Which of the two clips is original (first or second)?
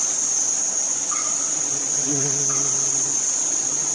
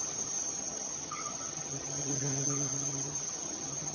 first